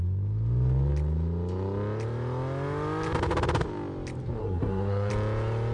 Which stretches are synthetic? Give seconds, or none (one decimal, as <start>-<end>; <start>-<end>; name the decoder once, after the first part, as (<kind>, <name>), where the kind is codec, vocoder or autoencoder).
4.4-5.1 (codec, SNAC)